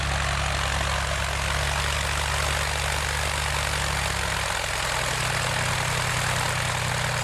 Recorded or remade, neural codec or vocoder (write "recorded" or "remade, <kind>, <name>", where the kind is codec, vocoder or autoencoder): recorded